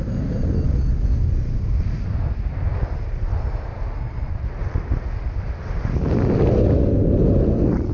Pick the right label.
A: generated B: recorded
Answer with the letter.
B